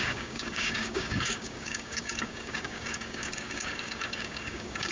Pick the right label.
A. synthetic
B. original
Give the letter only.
A